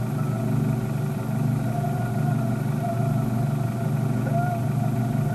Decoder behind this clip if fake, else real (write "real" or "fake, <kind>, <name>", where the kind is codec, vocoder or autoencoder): real